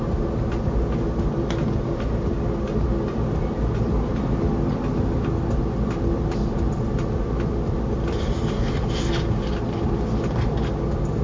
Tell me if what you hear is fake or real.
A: real